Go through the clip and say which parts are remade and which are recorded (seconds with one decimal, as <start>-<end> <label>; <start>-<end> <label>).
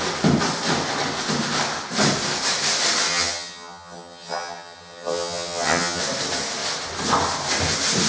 0.0-3.1 recorded; 3.1-6.0 remade; 6.0-8.1 recorded